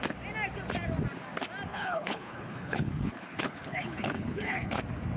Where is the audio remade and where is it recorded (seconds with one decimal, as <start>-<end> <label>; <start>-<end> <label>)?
0.0-1.7 recorded; 1.7-4.8 remade; 4.8-5.2 recorded